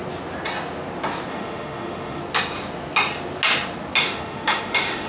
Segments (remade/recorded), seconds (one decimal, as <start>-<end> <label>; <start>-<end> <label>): 0.0-1.3 recorded; 1.3-2.2 remade; 2.2-4.0 recorded; 4.0-5.1 remade

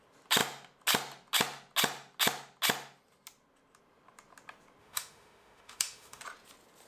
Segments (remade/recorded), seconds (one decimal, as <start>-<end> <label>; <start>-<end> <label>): 0.0-4.8 recorded; 4.8-6.2 remade; 6.2-6.9 recorded

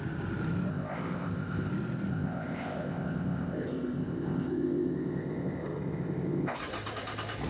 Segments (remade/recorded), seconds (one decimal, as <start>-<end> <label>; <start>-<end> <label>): 0.0-0.7 recorded; 0.7-1.7 remade; 1.7-2.1 recorded; 2.1-6.6 remade; 6.6-7.5 recorded

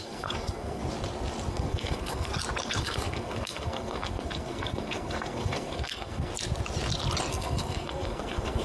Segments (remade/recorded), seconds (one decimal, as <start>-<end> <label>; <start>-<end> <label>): 0.0-0.8 remade; 0.8-1.5 recorded; 1.5-2.3 remade; 2.3-2.8 recorded; 2.8-6.3 remade; 6.3-7.3 recorded; 7.3-8.6 remade

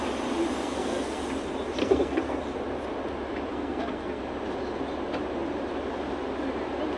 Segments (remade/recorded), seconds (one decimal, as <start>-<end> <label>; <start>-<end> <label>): 0.0-0.6 recorded; 0.6-1.2 remade; 1.2-1.8 recorded; 1.8-2.4 remade; 2.4-3.5 recorded; 3.5-4.2 remade; 4.2-7.0 recorded

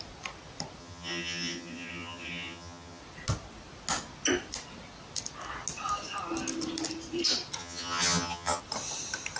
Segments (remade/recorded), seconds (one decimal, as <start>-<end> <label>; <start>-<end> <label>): 0.0-0.8 recorded; 0.8-3.0 remade; 3.0-7.6 recorded; 7.6-8.6 remade; 8.6-9.4 recorded

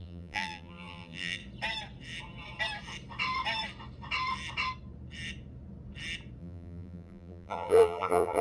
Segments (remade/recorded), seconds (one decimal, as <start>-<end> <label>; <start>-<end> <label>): 0.0-1.4 remade; 1.4-6.4 recorded; 6.4-8.4 remade